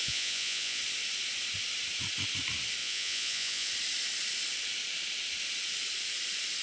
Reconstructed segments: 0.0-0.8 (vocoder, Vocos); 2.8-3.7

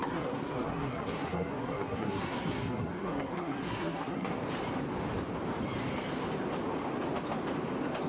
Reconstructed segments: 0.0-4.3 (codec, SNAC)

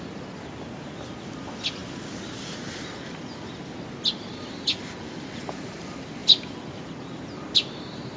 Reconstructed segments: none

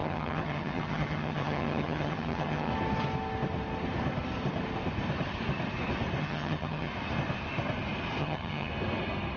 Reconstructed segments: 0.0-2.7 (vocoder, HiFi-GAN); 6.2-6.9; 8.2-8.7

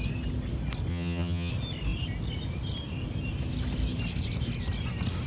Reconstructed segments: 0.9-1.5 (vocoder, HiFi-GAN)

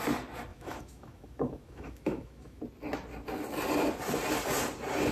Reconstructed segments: 0.5-2.6 (autoencoder, DAC-VAE)

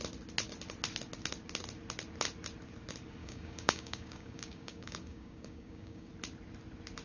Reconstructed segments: 3.2-6.1 (codec, DAC)

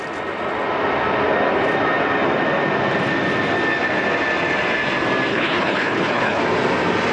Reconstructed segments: 5.3-6.4 (codec, HILCodec)